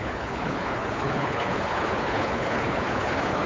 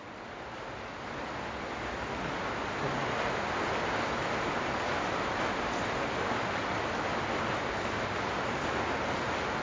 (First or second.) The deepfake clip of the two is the first